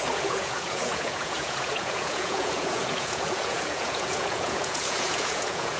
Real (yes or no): no